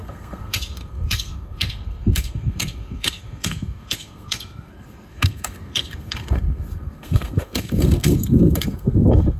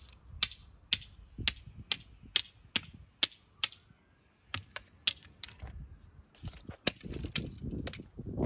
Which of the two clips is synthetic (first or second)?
first